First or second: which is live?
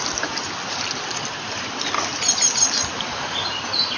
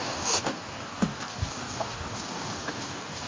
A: first